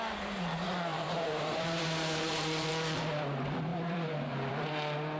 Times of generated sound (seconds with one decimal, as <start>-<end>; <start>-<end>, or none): 0.9-2.7; 3.7-4.5